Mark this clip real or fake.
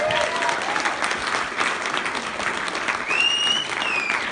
real